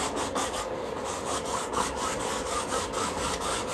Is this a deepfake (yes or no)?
yes